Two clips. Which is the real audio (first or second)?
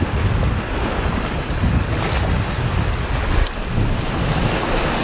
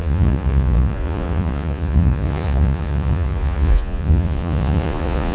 first